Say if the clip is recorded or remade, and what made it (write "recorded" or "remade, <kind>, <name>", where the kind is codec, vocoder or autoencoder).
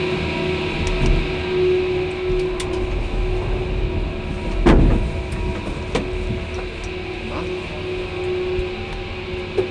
recorded